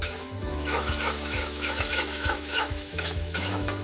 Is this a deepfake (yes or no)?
yes